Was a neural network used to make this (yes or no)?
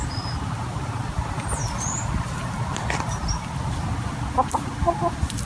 yes